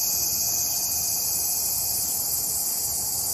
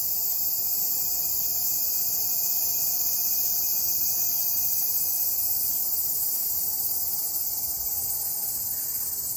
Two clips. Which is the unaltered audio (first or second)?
first